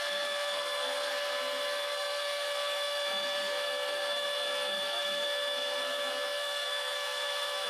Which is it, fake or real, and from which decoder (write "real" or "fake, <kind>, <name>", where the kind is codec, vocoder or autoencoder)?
fake, codec, SNAC